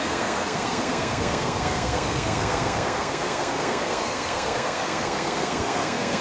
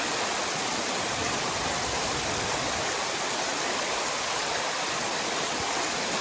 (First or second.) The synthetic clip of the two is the first